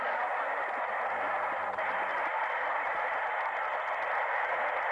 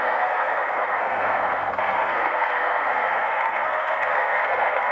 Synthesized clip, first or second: second